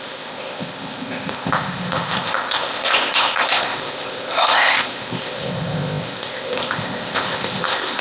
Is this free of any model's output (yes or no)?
no